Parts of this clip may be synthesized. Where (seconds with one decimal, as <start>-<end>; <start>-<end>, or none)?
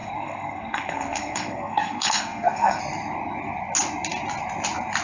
0.0-2.8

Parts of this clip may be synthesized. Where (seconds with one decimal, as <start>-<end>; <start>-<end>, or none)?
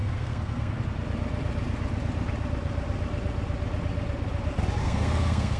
0.0-0.8; 4.8-5.6